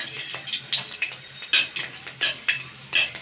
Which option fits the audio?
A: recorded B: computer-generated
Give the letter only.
A